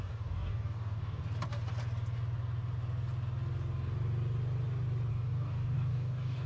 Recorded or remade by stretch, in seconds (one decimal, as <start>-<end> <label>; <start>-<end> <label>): 0.0-1.2 remade; 1.2-5.1 recorded; 5.1-6.5 remade